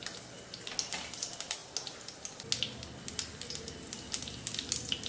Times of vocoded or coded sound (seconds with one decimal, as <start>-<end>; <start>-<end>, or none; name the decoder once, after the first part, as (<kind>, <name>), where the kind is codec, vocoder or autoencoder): none